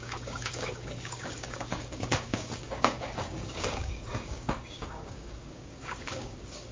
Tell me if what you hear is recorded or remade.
remade